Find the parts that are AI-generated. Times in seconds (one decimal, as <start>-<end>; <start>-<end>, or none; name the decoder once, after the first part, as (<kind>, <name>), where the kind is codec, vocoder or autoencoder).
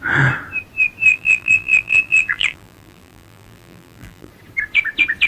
1.1-4.3 (vocoder, BigVGAN v2)